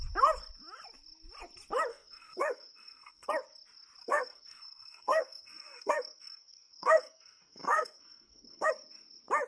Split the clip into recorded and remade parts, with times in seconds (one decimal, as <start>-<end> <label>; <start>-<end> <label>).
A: 0.0-1.9 recorded; 1.9-3.3 remade; 3.3-4.0 recorded; 4.0-8.7 remade; 8.7-9.5 recorded

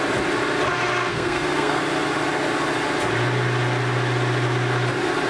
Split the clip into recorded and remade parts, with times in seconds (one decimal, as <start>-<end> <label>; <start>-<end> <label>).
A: 0.0-1.1 recorded; 1.1-1.8 remade; 1.8-5.3 recorded

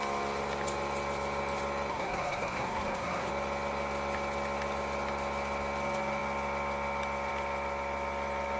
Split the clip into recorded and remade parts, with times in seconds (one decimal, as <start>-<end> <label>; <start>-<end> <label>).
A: 0.0-1.9 recorded; 1.9-3.3 remade; 3.3-8.6 recorded

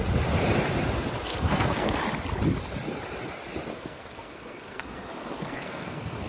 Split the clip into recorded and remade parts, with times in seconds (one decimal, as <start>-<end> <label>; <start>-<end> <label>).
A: 0.0-1.3 recorded; 1.3-2.0 remade; 2.0-3.7 recorded; 3.7-6.3 remade

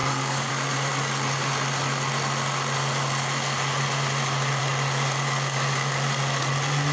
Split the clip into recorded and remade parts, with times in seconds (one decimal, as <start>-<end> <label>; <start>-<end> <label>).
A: 0.0-0.5 remade; 0.5-6.9 recorded

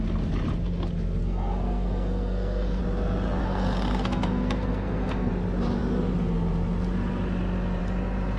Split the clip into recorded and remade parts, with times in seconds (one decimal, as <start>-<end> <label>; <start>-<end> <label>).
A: 0.0-1.2 recorded; 1.2-2.8 remade; 2.8-3.4 recorded; 3.4-5.3 remade; 5.3-8.4 recorded